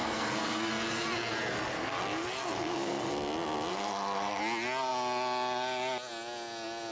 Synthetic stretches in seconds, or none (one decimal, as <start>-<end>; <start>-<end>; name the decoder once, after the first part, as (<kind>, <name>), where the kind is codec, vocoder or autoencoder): 0.0-0.7 (codec, SNAC); 1.7-3.1; 3.7-4.4